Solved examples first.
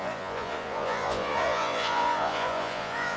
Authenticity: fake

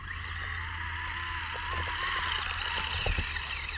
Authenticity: real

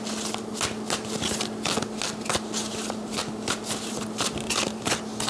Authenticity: real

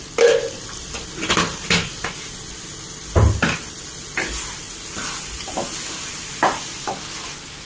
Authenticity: real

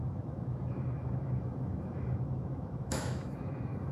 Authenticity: fake